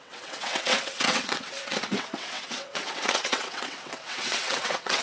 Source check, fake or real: fake